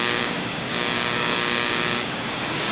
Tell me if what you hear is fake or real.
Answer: fake